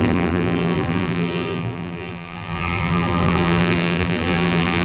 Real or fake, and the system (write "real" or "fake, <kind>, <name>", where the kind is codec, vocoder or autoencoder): fake, vocoder, BigVGAN v2